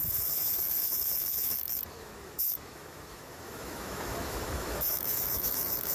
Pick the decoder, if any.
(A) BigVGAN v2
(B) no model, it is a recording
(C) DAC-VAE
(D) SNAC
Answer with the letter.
C